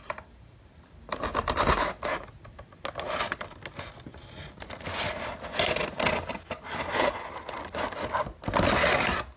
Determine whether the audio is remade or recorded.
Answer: recorded